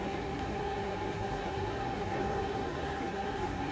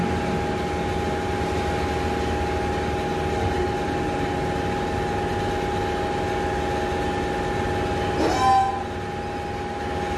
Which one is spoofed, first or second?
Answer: first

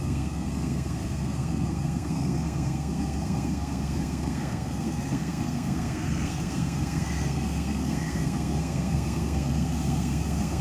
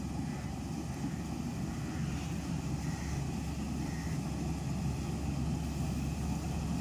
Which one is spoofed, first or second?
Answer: first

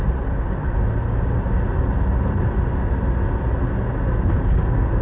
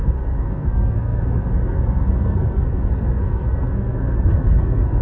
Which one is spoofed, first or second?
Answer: second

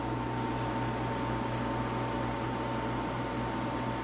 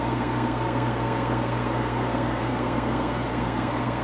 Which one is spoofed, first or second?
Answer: second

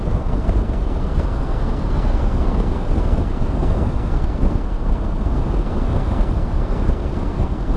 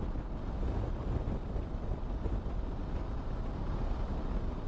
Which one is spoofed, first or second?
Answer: first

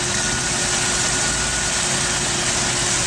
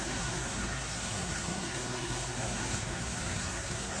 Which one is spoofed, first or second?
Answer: second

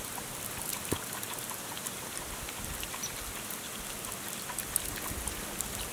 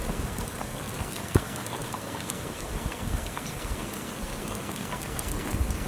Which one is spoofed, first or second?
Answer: second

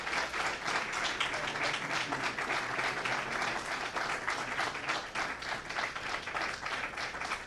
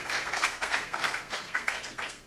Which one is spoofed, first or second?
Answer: second